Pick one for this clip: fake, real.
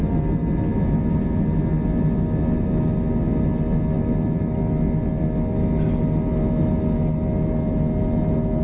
real